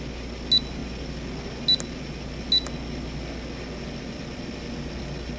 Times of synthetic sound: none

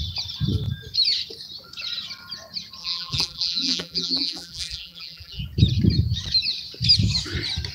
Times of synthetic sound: 2.8-5.4 (vocoder, BigVGAN v2)

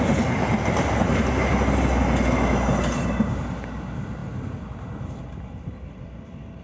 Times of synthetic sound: none